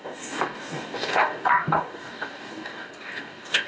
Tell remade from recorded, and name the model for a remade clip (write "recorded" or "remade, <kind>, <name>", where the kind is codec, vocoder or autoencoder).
remade, codec, DAC